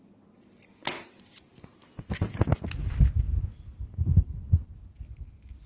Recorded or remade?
recorded